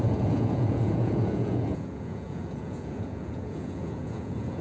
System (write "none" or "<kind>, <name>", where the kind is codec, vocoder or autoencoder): vocoder, Vocos